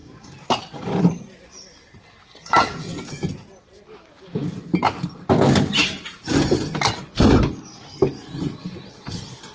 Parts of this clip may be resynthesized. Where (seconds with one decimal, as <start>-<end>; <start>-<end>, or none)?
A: 2.4-3.0